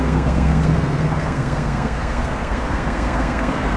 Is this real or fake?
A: fake